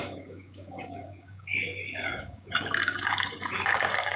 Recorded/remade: remade